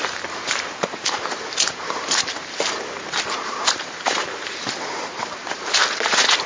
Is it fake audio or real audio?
fake